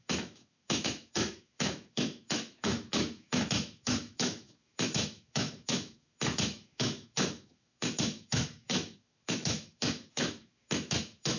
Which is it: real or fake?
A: fake